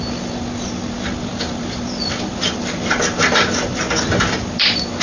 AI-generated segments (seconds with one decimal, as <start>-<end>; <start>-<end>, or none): none